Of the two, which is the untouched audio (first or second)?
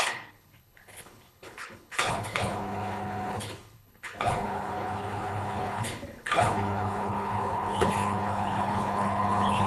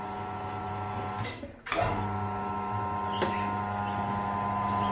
second